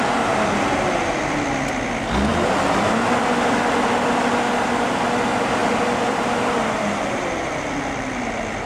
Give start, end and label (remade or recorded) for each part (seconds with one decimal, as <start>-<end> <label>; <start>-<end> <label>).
0.0-5.6 recorded; 5.6-8.7 remade